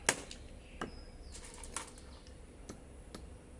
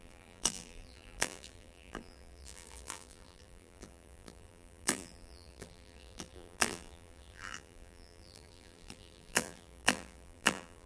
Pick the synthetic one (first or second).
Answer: second